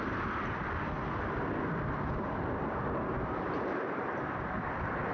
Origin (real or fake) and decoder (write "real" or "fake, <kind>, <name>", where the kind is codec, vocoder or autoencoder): real